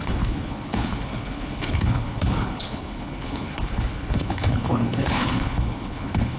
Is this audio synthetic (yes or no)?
yes